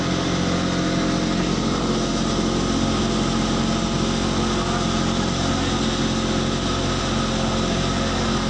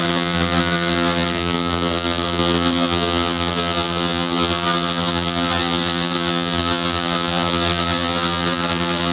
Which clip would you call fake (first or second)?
second